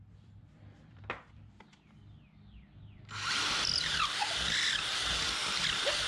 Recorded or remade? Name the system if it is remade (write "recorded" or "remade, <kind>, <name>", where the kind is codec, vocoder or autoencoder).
remade, vocoder, BigVGAN v2